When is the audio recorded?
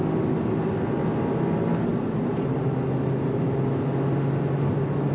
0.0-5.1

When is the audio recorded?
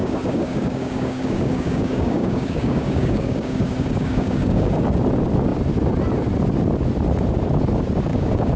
4.7-8.1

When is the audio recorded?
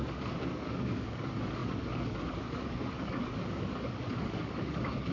none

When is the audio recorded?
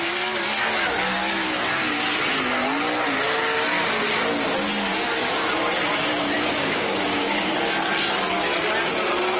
0.0-6.6; 7.9-9.4